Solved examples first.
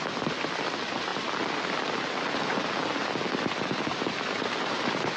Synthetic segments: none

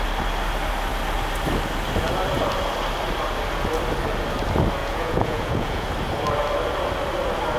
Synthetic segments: 4.8-5.9

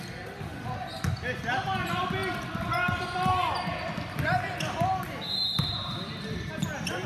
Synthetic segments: none

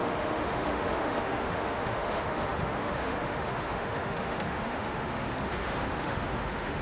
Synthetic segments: 0.0-6.8